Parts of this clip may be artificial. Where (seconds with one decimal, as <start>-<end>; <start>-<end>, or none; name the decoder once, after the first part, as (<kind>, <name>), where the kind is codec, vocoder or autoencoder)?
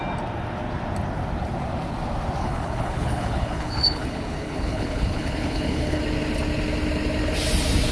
2.4-6.0 (codec, HILCodec)